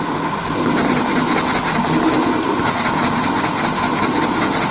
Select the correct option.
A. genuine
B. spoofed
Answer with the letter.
A